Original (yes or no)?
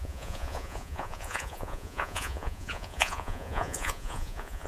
no